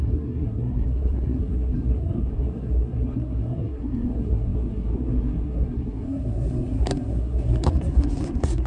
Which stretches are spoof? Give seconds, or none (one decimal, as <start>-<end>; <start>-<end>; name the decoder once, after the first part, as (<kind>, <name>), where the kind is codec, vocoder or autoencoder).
0.0-8.7 (codec, SNAC)